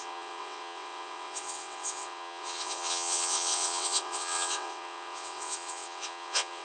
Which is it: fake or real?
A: fake